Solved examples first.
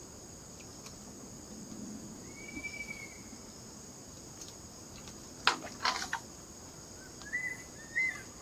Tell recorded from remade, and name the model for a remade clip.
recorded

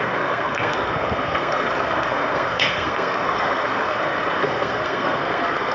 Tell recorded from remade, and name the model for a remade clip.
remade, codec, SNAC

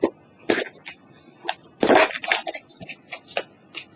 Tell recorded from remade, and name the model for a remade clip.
remade, vocoder, BigVGAN v2